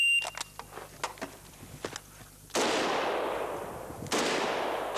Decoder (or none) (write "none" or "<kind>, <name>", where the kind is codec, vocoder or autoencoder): none